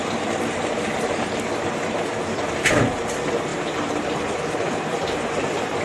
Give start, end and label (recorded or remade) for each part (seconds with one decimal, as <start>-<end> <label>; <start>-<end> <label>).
0.0-3.0 remade; 3.0-3.5 recorded; 3.5-5.8 remade